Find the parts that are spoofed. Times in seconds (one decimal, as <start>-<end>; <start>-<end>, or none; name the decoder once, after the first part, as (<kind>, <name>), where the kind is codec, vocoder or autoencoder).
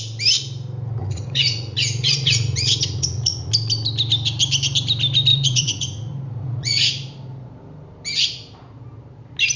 1.0-3.5 (vocoder, Vocos); 5.3-7.5